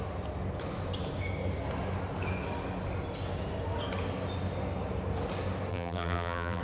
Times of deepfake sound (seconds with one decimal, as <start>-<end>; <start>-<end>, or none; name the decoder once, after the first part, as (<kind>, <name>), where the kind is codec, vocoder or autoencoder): 5.7-6.6 (vocoder, BigVGAN v2)